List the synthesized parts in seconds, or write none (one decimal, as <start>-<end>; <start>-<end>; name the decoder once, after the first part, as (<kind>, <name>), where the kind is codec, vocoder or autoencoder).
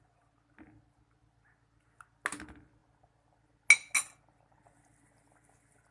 none